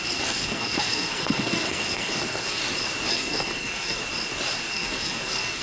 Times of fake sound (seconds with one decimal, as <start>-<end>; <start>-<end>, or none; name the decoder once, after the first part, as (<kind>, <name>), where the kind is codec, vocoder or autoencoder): 0.0-2.6 (codec, SNAC); 3.1-4.0; 4.6-5.6